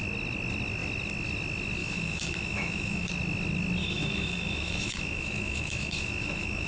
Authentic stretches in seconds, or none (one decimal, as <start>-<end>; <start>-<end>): 0.0-1.8; 3.1-3.8